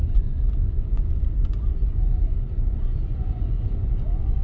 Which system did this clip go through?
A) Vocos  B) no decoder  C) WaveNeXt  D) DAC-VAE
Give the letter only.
A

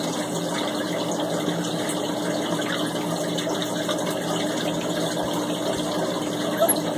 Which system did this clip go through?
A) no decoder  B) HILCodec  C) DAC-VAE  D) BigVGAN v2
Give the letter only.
A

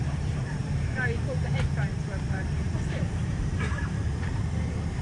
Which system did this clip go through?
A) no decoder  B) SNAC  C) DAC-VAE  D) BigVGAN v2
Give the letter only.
D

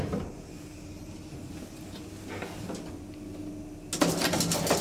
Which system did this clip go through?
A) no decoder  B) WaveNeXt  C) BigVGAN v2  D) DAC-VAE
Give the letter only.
A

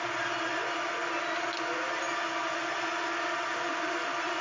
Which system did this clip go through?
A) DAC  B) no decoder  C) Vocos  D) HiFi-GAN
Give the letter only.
B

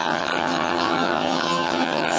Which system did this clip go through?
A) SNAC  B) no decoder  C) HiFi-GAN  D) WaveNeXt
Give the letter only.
C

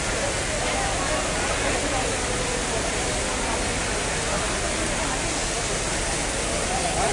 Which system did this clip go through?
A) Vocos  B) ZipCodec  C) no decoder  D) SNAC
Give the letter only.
C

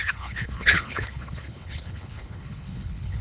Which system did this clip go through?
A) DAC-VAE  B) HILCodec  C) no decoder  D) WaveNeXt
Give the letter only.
B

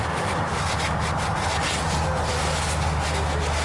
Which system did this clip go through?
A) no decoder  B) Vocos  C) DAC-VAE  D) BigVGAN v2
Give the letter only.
A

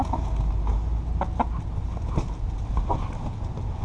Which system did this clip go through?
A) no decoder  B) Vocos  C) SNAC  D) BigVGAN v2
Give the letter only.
A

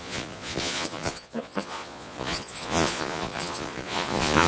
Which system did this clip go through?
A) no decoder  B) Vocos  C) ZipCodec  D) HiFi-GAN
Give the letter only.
B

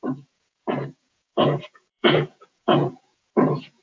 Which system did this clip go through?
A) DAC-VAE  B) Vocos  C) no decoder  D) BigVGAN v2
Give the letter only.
B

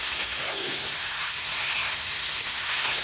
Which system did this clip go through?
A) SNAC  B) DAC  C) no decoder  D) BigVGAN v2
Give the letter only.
A